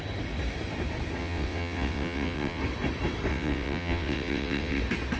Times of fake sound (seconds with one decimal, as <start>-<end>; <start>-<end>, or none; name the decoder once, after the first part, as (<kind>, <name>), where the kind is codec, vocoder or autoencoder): 1.2-2.6 (vocoder, WaveNeXt); 3.3-4.8